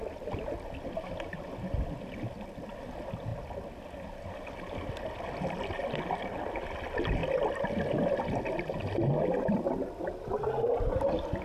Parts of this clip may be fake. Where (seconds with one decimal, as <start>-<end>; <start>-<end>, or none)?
none